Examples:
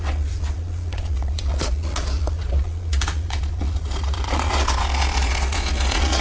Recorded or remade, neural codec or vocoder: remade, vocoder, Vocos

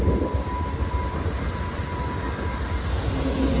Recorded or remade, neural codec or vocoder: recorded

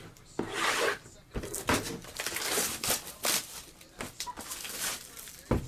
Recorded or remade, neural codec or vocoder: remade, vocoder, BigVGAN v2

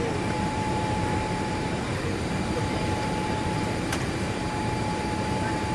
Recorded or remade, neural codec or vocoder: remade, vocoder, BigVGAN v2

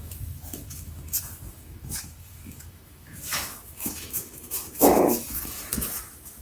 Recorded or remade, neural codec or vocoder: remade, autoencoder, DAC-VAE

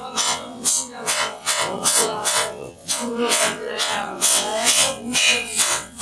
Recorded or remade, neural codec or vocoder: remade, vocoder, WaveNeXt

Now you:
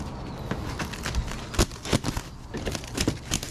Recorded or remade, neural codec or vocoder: recorded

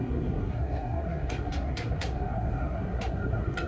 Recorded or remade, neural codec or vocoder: remade, codec, SNAC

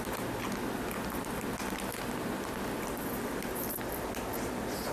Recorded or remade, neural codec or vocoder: recorded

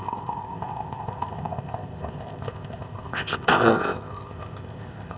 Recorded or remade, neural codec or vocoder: remade, codec, ZipCodec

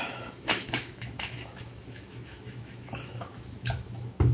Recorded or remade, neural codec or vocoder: remade, autoencoder, DAC-VAE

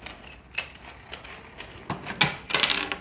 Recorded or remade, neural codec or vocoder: recorded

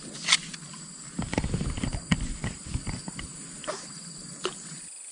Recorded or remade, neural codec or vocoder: remade, vocoder, BigVGAN v2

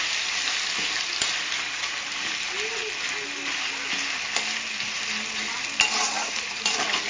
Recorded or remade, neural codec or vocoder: recorded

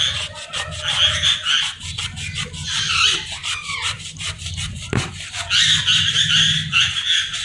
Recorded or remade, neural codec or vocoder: recorded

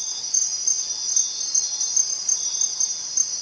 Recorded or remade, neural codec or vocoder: recorded